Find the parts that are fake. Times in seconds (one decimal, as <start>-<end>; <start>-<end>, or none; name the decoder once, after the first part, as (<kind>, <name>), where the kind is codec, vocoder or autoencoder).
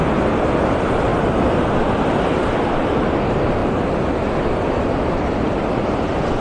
none